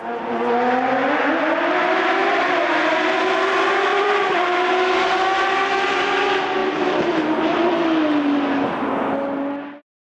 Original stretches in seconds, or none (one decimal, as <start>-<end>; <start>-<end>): 0.0-2.2; 2.7-3.9; 4.7-6.6; 7.7-10.1